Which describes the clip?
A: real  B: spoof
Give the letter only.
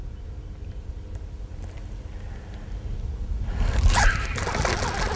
A